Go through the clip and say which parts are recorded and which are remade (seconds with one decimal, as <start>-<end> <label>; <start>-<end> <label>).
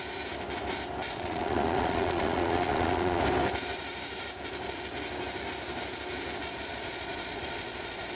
0.0-1.0 recorded; 1.0-3.2 remade; 3.2-6.4 recorded; 6.4-8.1 remade